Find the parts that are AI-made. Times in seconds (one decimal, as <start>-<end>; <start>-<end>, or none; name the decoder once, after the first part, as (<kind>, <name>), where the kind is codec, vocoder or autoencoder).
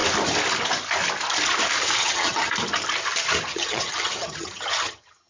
2.0-2.5 (vocoder, HiFi-GAN); 3.5-5.3